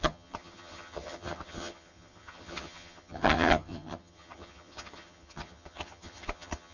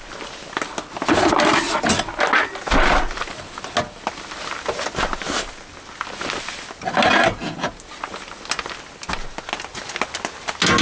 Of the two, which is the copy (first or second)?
first